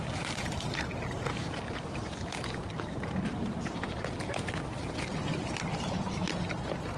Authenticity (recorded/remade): recorded